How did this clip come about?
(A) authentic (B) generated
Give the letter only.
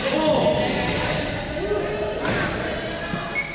A